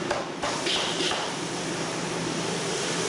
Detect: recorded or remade remade